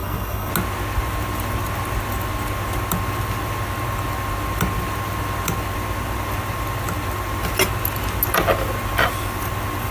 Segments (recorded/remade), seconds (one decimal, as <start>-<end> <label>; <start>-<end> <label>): 0.0-0.5 remade; 0.5-9.9 recorded

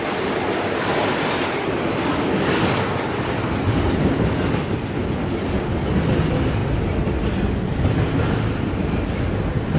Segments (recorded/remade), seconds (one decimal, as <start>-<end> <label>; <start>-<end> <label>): 0.0-9.8 recorded

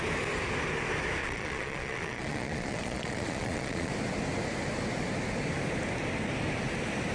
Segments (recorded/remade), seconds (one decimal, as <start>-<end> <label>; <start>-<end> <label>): 0.0-1.2 recorded; 1.2-3.9 remade; 3.9-7.1 recorded

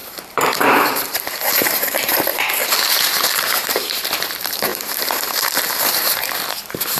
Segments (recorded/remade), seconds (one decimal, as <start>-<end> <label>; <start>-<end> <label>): 0.0-2.3 remade; 2.3-2.8 recorded; 2.8-7.0 remade